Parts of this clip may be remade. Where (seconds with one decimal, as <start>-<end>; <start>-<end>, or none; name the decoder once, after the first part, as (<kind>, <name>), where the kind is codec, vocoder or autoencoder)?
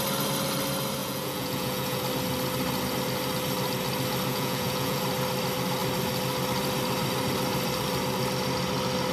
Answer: 1.0-2.0 (vocoder, Vocos); 4.3-5.0